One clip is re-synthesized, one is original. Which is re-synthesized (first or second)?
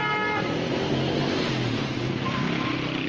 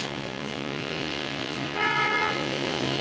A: second